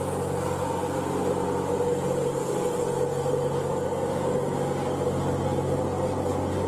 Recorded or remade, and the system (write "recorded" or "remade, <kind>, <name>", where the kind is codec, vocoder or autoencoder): recorded